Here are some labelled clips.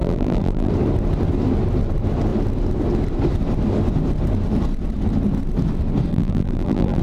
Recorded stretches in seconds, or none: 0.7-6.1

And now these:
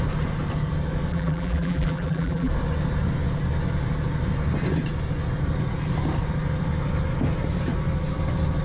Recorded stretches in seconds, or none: 0.0-1.1; 2.5-8.6

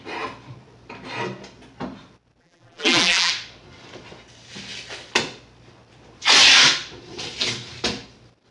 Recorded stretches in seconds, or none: 0.0-2.4; 3.3-8.5

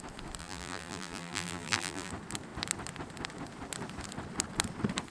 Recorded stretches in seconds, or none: 0.0-0.4; 2.1-5.1

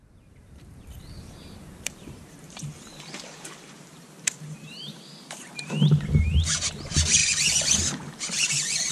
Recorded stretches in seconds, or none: none

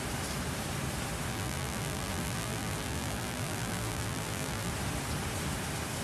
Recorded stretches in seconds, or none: 0.0-1.3; 4.7-6.0

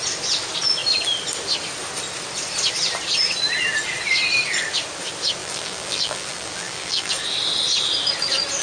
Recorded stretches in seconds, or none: 0.0-5.4; 7.1-8.6

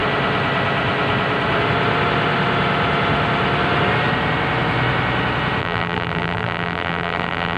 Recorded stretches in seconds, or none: 0.0-5.6